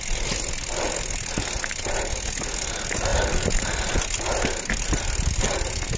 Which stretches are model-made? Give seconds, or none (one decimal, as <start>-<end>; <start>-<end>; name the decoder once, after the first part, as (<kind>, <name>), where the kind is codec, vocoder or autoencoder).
none